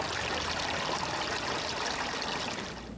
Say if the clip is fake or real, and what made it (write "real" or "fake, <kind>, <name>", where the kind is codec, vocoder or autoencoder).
real